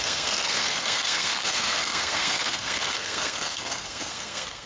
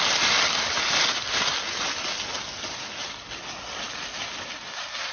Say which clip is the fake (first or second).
first